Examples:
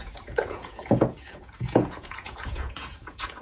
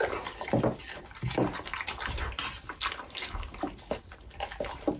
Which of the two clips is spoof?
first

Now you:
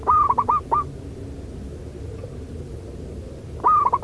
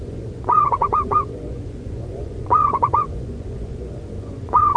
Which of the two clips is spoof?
second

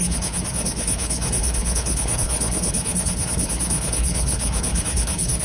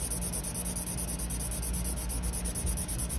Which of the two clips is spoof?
first